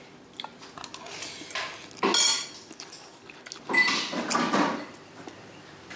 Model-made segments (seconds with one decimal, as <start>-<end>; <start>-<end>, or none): none